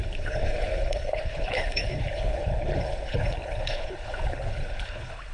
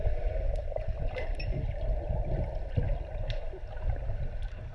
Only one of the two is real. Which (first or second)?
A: second